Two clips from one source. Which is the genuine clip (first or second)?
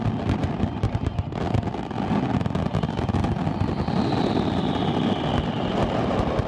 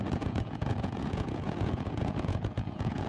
first